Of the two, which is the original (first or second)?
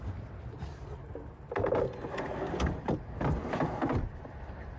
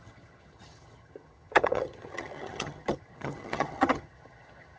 first